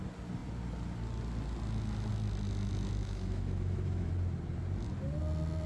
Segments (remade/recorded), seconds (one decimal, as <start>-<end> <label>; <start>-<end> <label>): 0.0-3.0 recorded; 3.0-4.1 remade; 4.1-5.7 recorded